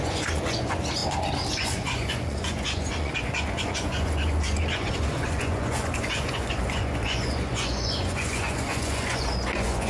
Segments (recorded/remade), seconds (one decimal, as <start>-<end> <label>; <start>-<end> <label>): 0.0-1.0 remade; 1.0-1.5 recorded; 1.5-9.9 remade

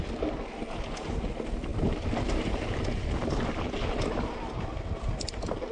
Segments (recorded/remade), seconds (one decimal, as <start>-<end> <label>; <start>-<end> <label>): 0.0-5.7 recorded

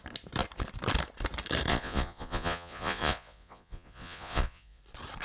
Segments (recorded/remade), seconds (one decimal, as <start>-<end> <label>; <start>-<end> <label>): 0.0-1.7 recorded; 1.7-4.8 remade; 4.8-5.2 recorded

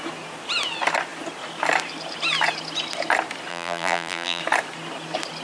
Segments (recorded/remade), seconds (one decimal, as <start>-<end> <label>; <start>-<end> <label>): 0.0-3.5 recorded; 3.5-4.4 remade; 4.4-5.4 recorded

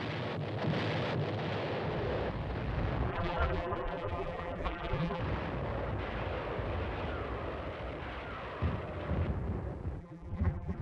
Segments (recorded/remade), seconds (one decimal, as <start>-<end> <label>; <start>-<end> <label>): 0.0-3.1 recorded; 3.1-5.2 remade; 5.2-10.0 recorded; 10.0-10.8 remade

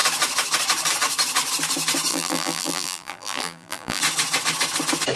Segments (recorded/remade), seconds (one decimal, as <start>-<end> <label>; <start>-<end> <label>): 0.0-2.1 recorded; 2.1-4.0 remade; 4.0-5.2 recorded

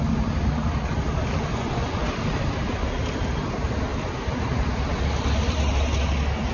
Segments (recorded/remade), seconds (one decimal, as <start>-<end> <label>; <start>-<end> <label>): 0.0-1.5 recorded; 1.5-2.1 remade; 2.1-6.5 recorded